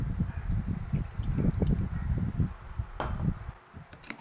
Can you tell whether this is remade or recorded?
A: recorded